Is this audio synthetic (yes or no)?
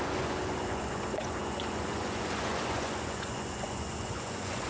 yes